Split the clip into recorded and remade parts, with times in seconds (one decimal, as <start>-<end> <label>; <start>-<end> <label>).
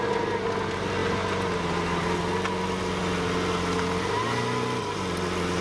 0.0-5.6 recorded